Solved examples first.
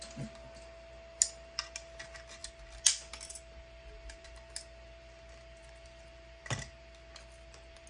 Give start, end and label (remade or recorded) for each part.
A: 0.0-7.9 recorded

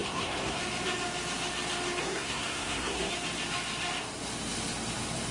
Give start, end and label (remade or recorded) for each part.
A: 0.0-0.6 remade; 0.6-2.0 recorded; 2.0-3.1 remade; 3.1-5.3 recorded

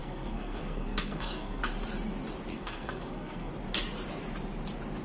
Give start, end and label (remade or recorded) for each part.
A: 0.0-1.6 remade; 1.6-2.5 recorded; 2.5-3.5 remade; 3.5-5.0 recorded

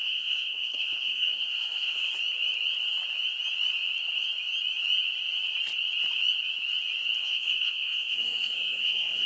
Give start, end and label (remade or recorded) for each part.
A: 0.0-2.1 remade; 2.1-7.2 recorded; 7.2-9.3 remade

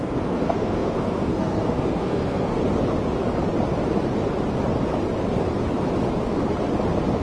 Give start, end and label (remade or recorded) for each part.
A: 0.0-2.6 remade; 2.6-7.2 recorded

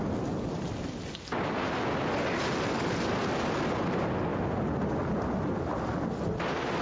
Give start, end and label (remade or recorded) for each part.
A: 0.0-6.8 recorded